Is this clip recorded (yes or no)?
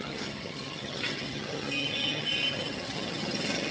no